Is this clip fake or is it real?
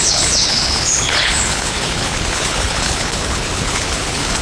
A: fake